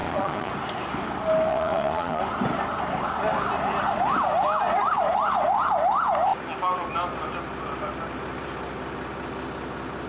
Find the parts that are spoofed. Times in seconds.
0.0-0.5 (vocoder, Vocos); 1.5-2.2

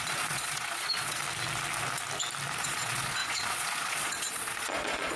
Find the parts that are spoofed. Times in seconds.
0.0-1.2 (vocoder, Vocos); 2.6-5.2

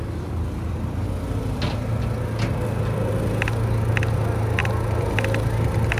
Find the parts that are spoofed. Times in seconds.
none